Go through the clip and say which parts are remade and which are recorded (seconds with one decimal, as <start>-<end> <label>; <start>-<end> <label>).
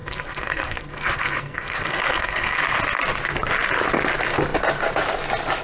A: 0.0-2.6 remade; 2.6-5.6 recorded